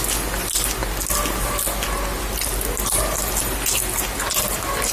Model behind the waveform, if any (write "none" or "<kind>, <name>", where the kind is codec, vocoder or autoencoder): none